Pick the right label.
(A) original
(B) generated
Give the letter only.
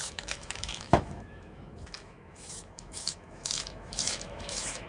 B